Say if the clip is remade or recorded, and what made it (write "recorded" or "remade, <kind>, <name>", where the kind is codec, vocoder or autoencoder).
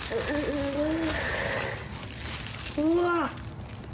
recorded